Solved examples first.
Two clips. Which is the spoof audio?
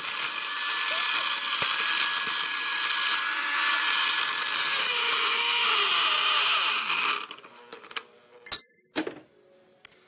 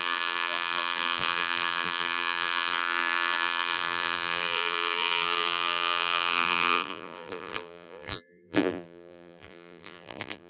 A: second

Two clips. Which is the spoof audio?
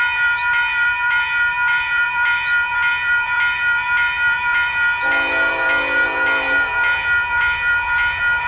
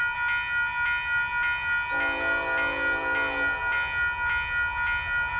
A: first